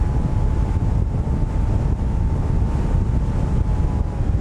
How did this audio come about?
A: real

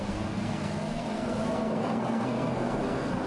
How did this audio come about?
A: fake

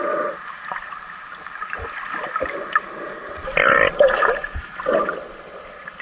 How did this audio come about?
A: fake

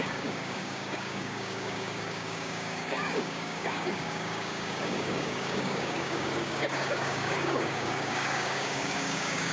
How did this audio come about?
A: fake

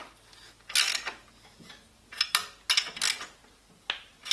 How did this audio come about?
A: real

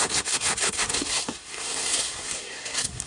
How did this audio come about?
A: fake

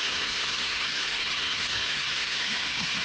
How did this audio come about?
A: fake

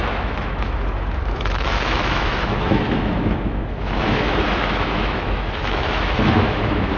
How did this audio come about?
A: fake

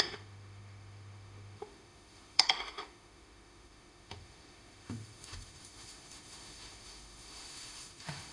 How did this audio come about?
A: fake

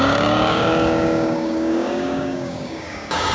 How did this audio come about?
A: fake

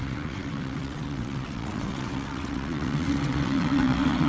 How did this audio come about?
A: fake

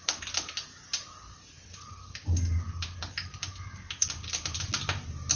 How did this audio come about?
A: real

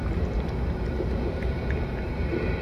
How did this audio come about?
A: real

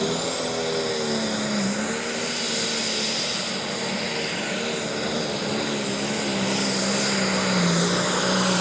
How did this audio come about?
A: real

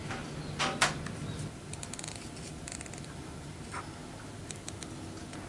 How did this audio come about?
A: real